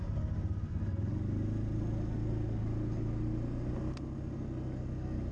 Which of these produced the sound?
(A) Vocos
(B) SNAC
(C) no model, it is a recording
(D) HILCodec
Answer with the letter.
C